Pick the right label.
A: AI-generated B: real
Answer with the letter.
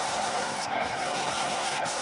A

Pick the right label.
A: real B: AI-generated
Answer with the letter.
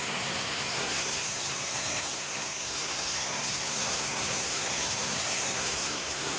B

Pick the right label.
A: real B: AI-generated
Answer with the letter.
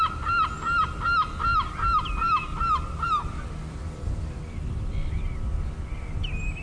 A